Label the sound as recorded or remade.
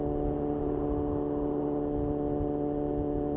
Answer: recorded